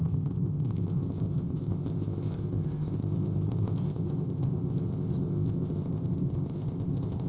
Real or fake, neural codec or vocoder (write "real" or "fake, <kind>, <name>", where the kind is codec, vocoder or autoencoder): fake, codec, ZipCodec